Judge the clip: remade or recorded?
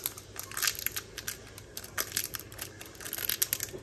recorded